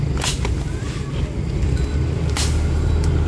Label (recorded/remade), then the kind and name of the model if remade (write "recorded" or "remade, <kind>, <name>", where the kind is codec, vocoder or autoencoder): recorded